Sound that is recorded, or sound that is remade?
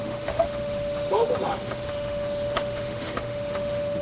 remade